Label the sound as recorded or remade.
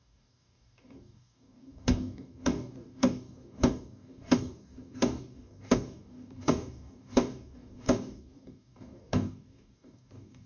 remade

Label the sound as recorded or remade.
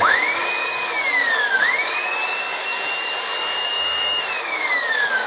remade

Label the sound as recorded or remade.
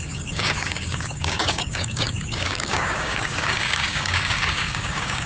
remade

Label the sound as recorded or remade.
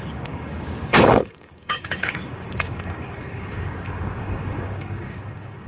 remade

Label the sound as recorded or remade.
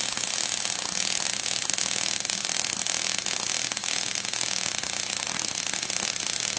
recorded